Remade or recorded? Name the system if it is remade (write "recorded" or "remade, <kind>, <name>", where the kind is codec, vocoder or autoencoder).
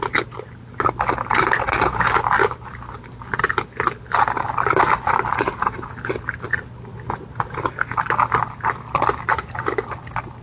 recorded